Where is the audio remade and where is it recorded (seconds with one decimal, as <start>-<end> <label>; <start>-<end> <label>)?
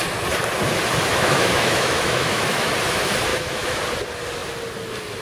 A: 0.0-1.1 recorded; 1.1-2.7 remade; 2.7-3.3 recorded; 3.3-3.8 remade; 3.8-5.2 recorded